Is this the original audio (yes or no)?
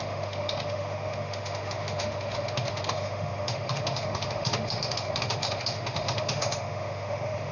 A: no